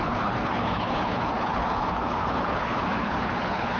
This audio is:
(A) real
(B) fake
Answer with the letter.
B